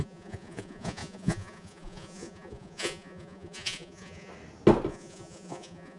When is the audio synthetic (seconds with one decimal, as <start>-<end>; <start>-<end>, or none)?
0.0-4.3; 4.9-6.0